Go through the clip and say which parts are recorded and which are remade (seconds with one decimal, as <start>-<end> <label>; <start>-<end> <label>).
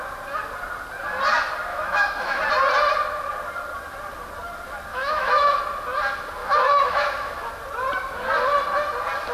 0.0-1.7 recorded; 1.7-2.4 remade; 2.4-4.9 recorded; 4.9-5.6 remade; 5.6-6.4 recorded; 6.4-7.5 remade; 7.5-9.3 recorded